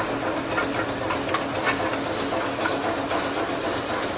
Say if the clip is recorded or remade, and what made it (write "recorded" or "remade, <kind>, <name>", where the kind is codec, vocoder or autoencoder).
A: recorded